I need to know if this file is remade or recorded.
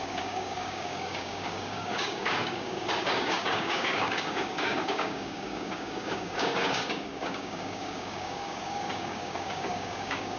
remade